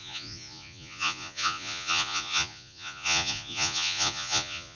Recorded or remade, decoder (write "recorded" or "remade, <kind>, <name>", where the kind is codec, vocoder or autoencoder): remade, vocoder, Vocos